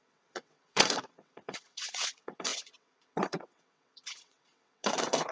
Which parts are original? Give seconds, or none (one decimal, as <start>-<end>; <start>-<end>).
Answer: none